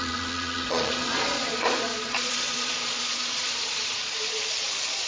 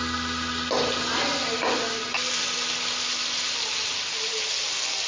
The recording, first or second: second